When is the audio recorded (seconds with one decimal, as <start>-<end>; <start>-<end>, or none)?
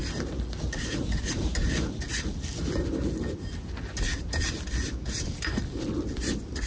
0.0-6.7